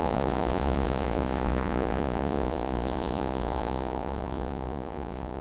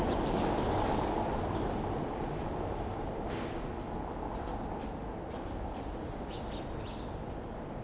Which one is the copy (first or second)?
first